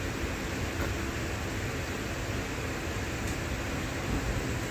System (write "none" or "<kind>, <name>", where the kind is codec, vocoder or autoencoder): none